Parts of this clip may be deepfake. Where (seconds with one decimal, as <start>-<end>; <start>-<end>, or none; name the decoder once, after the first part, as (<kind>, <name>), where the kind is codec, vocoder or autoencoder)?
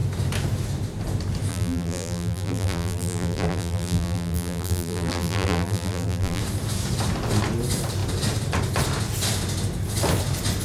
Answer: 1.5-6.4 (vocoder, BigVGAN v2)